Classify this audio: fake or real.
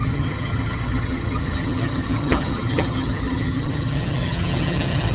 fake